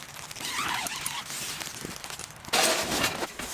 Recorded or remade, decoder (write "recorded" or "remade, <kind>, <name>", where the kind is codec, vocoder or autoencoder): recorded